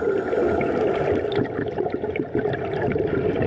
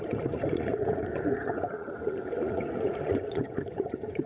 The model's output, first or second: second